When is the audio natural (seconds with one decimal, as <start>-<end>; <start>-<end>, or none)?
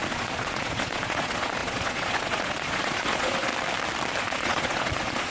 3.5-4.2